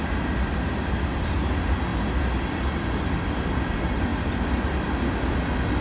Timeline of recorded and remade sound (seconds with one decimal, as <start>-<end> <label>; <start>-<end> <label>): 0.0-5.8 recorded